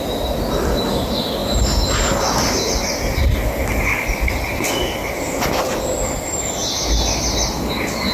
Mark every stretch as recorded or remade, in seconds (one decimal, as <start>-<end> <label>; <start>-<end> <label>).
0.0-8.1 recorded